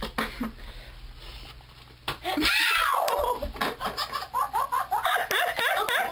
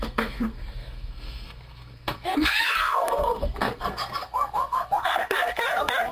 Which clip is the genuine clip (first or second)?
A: first